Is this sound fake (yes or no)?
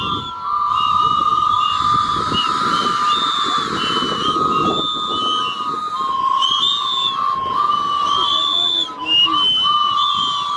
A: no